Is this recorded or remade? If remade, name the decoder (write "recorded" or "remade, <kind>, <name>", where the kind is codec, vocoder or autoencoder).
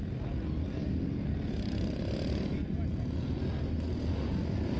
recorded